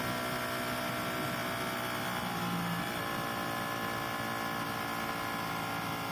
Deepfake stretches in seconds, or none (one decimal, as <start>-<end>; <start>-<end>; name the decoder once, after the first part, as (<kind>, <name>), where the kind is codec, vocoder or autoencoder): none